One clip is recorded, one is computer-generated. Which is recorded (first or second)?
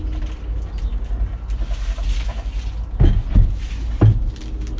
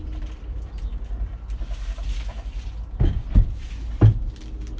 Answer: first